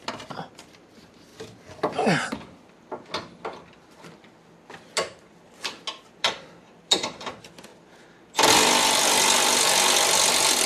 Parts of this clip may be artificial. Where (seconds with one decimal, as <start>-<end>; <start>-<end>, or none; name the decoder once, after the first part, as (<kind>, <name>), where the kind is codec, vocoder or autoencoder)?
6.2-7.3 (vocoder, BigVGAN v2)